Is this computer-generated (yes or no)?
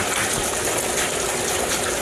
no